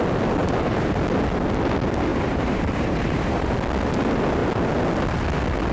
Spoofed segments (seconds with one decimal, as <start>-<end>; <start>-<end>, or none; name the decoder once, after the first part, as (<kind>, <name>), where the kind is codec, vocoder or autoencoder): 0.4-1.0 (vocoder, BigVGAN v2); 2.1-3.5